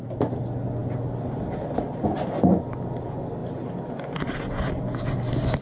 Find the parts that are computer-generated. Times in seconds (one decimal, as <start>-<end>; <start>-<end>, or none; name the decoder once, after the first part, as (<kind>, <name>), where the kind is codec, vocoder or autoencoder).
none